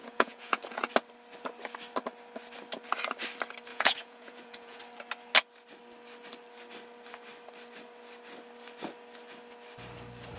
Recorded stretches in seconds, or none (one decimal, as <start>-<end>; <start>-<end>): 0.9-3.7; 4.8-10.4